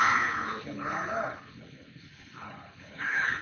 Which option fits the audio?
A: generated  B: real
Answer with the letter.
A